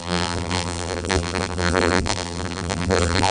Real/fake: fake